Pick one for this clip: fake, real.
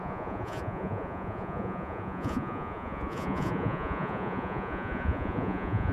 fake